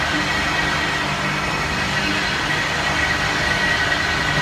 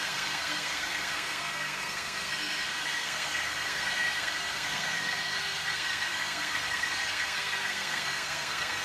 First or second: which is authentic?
first